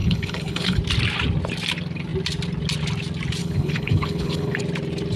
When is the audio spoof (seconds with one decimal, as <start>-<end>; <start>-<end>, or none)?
0.0-0.8; 3.4-4.6